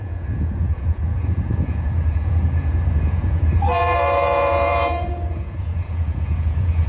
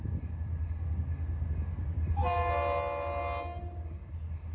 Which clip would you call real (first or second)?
second